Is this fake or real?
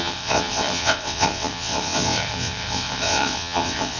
fake